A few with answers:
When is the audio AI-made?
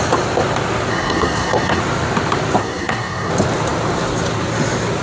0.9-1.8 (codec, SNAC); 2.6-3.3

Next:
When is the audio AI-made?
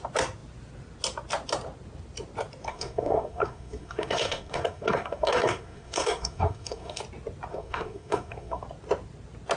2.7-7.0 (codec, SNAC); 7.5-8.6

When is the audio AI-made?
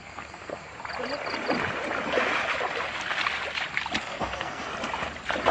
0.0-0.7 (codec, SNAC); 4.0-4.7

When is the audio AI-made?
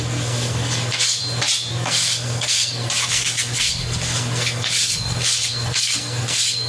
0.0-1.2 (codec, SNAC); 1.7-6.7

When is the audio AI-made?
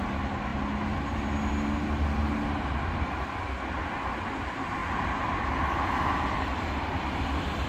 none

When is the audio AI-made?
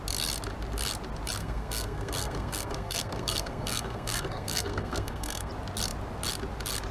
1.4-5.5 (codec, SNAC)